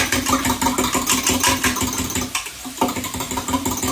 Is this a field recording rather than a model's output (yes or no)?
yes